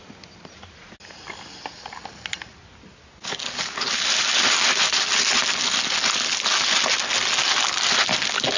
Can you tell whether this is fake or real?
real